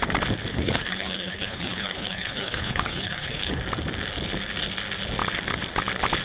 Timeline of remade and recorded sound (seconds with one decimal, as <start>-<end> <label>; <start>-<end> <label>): 0.0-0.5 recorded; 0.5-3.6 remade; 3.6-6.2 recorded